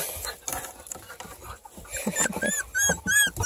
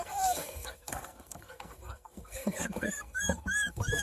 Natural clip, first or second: first